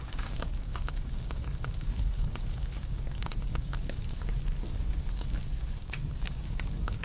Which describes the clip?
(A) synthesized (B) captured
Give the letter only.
A